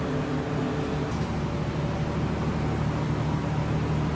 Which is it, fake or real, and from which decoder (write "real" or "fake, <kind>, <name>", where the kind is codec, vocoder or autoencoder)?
real